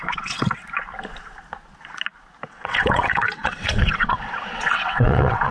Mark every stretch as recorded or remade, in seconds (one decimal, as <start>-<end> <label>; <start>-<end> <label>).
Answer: 0.0-0.6 remade; 0.6-2.5 recorded; 2.5-5.5 remade